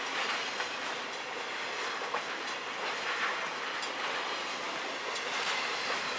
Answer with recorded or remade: remade